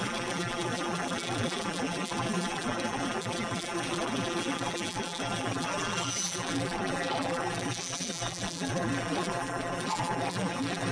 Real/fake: fake